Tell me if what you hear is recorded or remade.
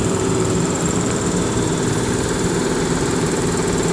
remade